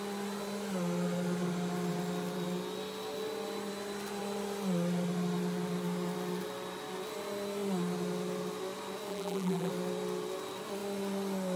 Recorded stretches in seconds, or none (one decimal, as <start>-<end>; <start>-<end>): 0.0-9.1; 9.7-11.6